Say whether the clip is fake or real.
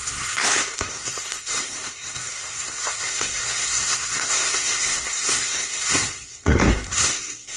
fake